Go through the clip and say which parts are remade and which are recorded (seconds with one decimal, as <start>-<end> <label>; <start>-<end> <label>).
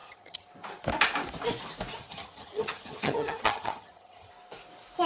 0.0-0.5 remade; 0.5-1.9 recorded; 1.9-4.3 remade; 4.3-5.1 recorded